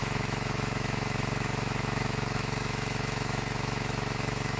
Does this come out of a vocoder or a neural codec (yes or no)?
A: yes